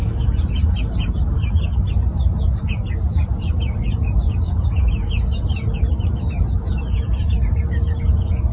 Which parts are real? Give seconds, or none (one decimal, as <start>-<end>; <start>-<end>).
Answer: 0.0-8.5